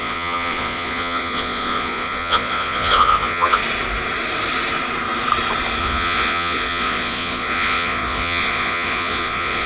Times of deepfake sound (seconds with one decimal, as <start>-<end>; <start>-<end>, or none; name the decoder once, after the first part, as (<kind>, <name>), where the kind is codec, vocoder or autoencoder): 0.0-3.6 (vocoder, Vocos); 5.8-9.7